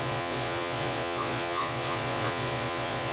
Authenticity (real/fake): fake